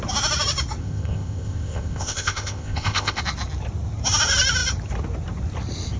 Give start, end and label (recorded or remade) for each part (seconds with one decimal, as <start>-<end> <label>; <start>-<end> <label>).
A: 0.0-0.8 recorded; 0.8-3.2 remade; 3.2-6.0 recorded